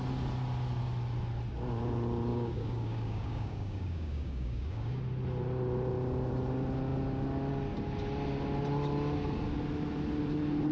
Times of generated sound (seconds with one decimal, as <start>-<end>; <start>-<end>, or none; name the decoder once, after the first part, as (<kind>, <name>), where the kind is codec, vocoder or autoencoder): 2.3-5.0 (codec, DAC)